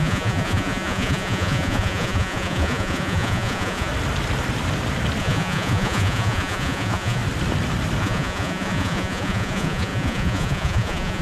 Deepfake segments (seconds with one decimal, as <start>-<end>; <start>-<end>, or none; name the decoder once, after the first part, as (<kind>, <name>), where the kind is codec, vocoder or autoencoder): 0.0-3.9 (vocoder, Vocos); 5.2-7.2; 8.0-11.2

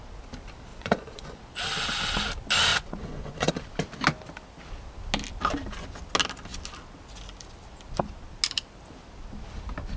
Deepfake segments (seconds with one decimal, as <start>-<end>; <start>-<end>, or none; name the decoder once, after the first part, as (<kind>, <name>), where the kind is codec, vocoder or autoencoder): 0.7-1.4 (vocoder, Vocos); 2.7-3.5